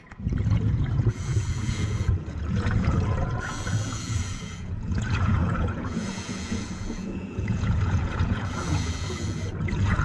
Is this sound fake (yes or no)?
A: yes